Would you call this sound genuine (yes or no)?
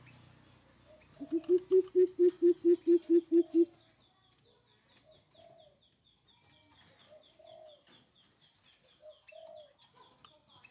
yes